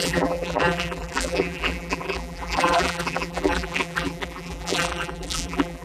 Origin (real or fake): fake